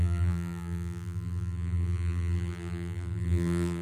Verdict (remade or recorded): remade